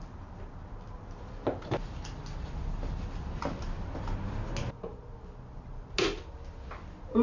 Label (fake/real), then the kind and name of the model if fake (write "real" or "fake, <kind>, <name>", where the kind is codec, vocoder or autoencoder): real